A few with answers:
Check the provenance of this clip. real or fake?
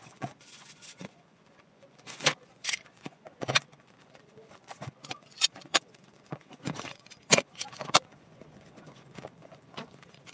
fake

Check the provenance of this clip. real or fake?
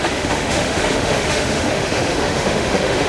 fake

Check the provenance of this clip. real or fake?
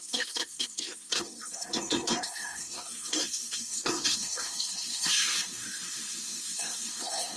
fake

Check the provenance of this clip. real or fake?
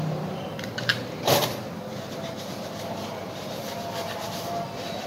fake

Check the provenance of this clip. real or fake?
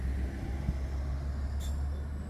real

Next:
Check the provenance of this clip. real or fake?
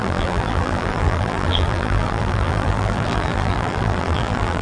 fake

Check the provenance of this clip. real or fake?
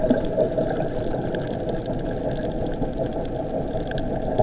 real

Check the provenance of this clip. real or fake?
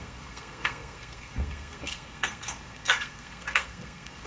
fake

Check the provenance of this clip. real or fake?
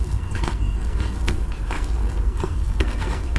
fake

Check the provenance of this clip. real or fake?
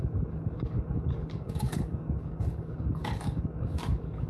fake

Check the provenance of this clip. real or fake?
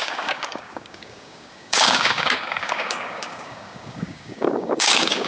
fake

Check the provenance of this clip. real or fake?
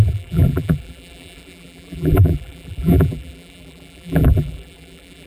fake